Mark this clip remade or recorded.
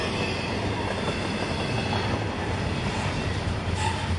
recorded